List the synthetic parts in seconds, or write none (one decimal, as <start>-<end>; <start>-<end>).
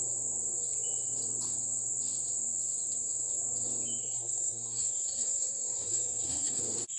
4.0-6.6